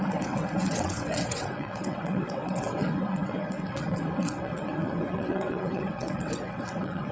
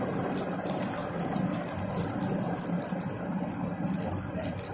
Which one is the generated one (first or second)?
first